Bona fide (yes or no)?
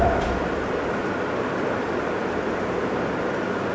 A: no